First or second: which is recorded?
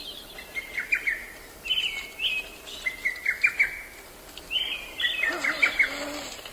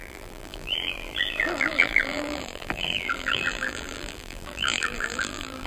first